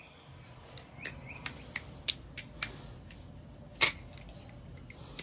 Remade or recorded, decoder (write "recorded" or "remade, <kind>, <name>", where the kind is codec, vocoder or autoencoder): recorded